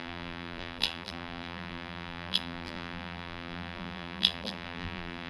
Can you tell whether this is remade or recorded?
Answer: remade